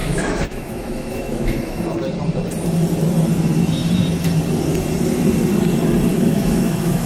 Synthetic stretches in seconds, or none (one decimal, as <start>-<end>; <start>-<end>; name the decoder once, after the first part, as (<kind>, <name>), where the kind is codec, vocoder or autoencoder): 0.0-1.8 (autoencoder, DAC-VAE); 6.1-7.1